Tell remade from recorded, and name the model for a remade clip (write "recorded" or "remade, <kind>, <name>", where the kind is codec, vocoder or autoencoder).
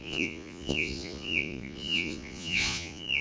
remade, vocoder, Vocos